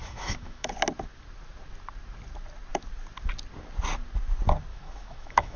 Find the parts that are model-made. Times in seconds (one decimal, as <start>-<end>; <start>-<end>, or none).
0.0-0.7; 4.7-5.6